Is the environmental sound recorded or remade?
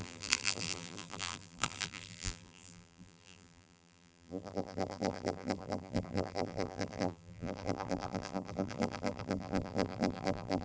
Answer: remade